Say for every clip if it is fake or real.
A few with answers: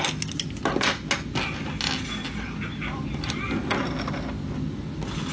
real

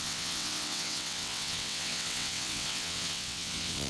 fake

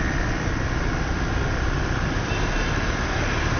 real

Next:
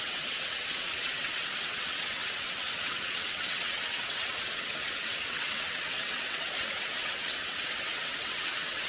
fake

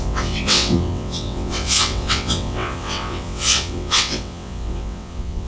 fake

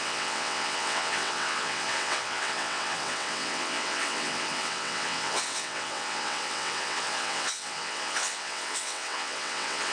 fake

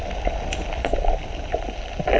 real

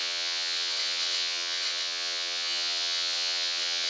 fake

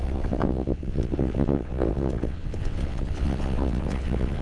fake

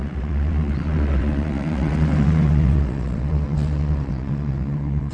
fake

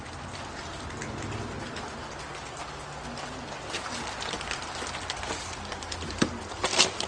real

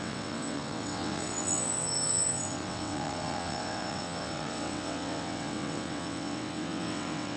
fake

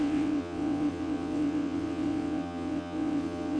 fake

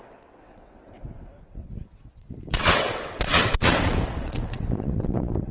fake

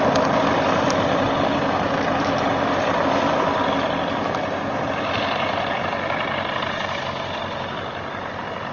real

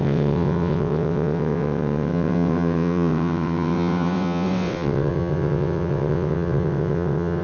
fake